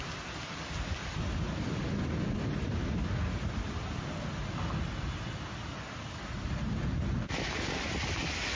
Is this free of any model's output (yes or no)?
yes